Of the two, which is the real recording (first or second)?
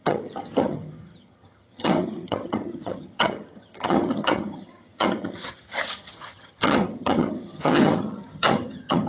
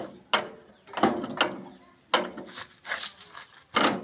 second